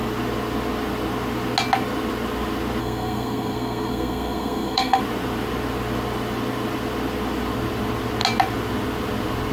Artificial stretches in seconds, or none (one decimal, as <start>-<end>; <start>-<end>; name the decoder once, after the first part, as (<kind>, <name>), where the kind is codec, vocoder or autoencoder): 2.8-5.0 (codec, SNAC)